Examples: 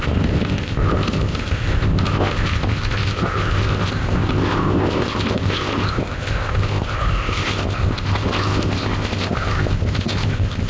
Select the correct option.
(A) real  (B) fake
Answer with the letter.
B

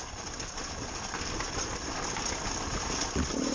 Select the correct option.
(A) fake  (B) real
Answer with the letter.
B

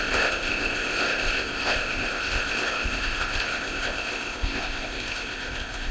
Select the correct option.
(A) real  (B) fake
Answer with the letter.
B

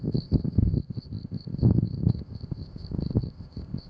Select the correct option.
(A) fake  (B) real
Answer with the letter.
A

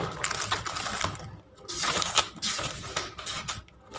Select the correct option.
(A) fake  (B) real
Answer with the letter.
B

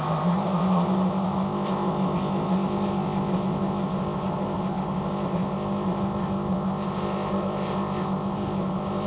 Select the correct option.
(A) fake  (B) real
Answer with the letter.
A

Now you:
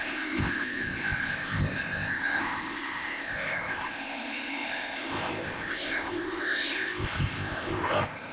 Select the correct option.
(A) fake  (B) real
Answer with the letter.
A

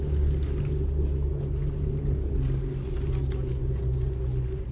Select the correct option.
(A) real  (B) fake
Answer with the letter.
A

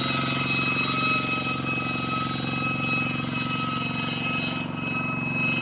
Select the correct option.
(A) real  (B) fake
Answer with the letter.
A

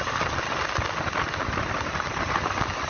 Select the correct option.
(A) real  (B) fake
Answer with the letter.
A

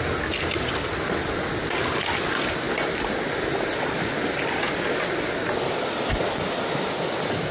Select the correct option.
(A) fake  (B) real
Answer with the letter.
B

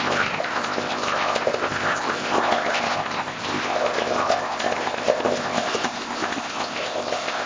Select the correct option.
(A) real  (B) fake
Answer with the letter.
B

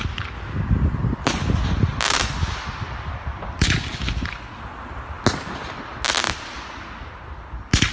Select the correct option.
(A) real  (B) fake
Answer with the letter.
A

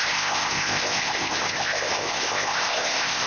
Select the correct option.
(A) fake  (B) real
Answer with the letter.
A